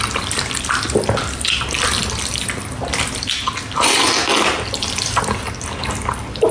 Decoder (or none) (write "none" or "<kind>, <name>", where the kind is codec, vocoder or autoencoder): none